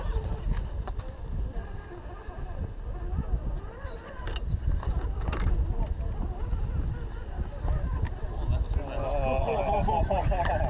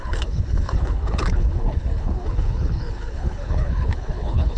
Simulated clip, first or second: second